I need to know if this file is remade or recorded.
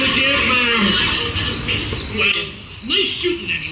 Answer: recorded